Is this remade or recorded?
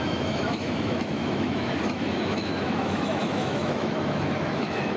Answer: remade